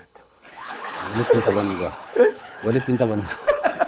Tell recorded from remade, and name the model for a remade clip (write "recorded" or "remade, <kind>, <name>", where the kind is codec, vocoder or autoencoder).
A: remade, codec, HILCodec